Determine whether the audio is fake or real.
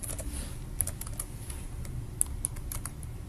real